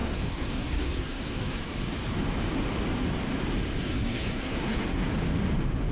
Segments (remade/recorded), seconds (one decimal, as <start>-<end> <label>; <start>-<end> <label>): 0.0-1.6 remade; 1.6-3.8 recorded; 3.8-5.1 remade; 5.1-5.9 recorded